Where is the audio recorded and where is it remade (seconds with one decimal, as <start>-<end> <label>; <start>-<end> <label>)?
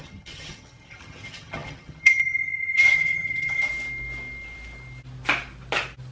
0.0-3.7 remade; 3.7-6.1 recorded